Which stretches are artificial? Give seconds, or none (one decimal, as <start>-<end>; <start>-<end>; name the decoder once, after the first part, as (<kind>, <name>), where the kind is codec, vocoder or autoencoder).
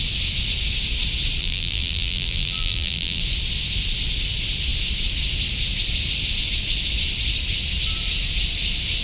1.4-3.2 (vocoder, BigVGAN v2)